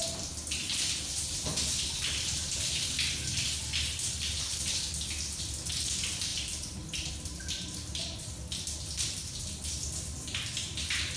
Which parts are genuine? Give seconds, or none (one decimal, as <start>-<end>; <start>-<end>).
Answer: 0.0-11.2

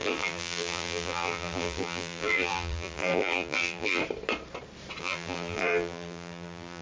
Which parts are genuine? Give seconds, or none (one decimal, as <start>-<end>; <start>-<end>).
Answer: 4.0-5.0

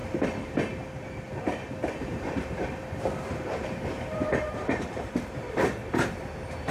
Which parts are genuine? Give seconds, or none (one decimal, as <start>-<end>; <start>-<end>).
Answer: 0.0-1.3

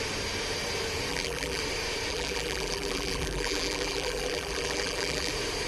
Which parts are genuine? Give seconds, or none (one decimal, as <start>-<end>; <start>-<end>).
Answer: 0.0-1.1; 1.6-2.1; 5.3-5.7